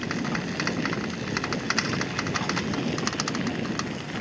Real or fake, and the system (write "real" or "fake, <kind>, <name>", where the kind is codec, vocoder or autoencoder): real